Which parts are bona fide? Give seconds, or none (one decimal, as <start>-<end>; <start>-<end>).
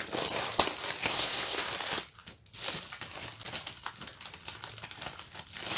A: 0.0-1.0; 1.6-5.8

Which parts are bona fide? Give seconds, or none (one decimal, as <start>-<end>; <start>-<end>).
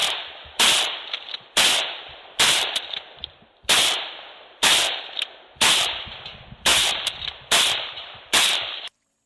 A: none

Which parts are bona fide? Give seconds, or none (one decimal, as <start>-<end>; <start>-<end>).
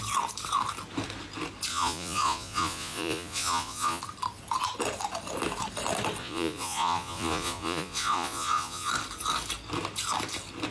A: 0.0-1.7; 4.0-6.2; 8.9-10.7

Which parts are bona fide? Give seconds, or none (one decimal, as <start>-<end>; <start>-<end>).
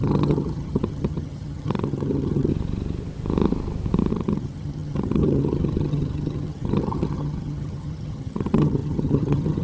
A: 2.5-4.1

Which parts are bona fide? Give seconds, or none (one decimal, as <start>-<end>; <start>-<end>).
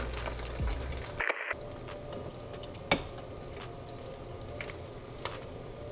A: 0.0-5.9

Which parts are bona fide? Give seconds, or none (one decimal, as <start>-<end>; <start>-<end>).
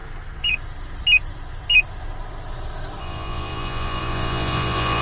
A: 0.0-3.0